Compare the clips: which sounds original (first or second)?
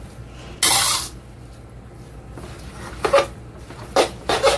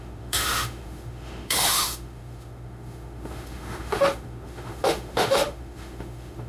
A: first